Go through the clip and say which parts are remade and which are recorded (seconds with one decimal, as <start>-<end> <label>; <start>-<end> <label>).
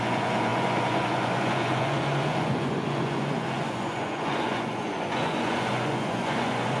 0.0-6.8 remade